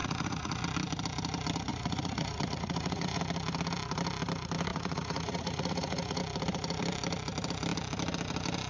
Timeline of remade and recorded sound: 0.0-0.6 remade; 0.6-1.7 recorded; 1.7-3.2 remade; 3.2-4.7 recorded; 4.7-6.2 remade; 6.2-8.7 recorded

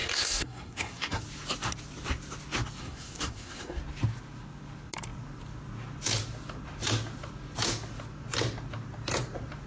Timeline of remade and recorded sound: 0.0-1.2 remade; 1.2-2.8 recorded; 2.8-3.8 remade; 3.8-9.7 recorded

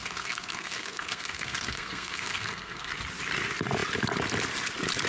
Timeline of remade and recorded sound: 0.0-2.9 remade; 2.9-5.1 recorded